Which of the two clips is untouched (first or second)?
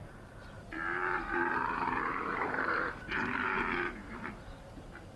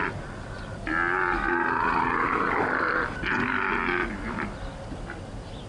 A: second